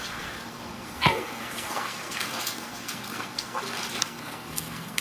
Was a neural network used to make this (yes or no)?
yes